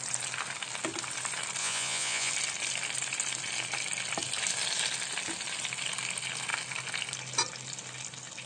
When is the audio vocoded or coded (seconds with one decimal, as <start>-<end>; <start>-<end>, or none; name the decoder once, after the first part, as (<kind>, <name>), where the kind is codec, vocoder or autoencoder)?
1.6-2.3 (vocoder, Vocos)